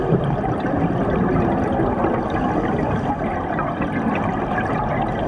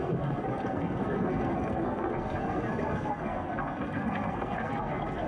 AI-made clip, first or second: second